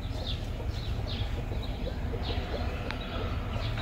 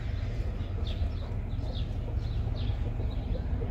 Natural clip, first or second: second